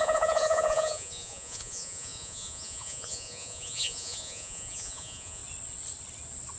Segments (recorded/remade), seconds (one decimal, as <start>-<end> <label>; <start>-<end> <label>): 0.0-5.4 remade; 5.4-6.6 recorded